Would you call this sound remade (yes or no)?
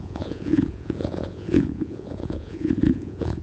yes